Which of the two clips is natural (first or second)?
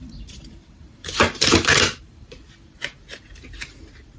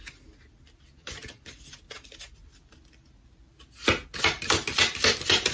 second